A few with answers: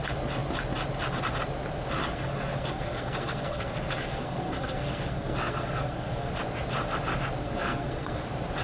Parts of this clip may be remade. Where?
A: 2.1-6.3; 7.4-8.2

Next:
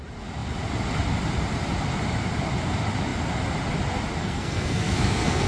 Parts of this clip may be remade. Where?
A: 4.2-5.5

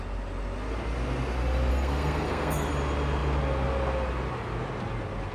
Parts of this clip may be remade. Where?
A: 1.7-2.7

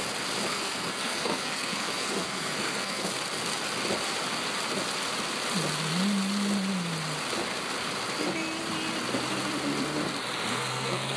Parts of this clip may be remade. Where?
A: 0.5-3.1; 10.5-11.2